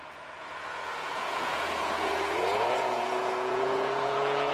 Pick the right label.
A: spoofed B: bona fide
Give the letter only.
A